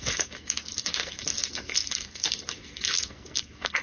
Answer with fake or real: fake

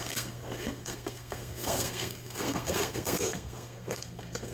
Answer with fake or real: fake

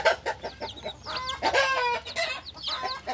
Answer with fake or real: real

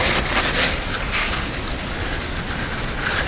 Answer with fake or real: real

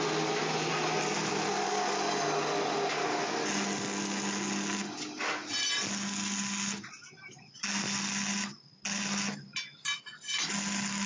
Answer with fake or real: real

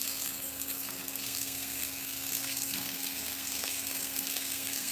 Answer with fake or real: fake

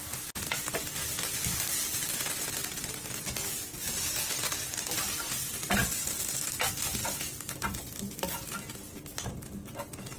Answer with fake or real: real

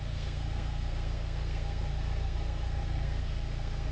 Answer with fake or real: fake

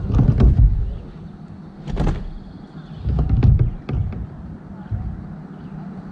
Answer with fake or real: real